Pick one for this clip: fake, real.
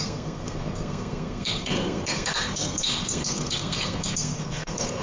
fake